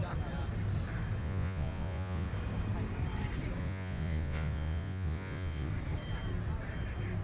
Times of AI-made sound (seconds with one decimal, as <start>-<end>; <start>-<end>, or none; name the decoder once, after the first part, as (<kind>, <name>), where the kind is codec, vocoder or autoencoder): 1.2-2.3 (vocoder, Vocos); 3.6-5.7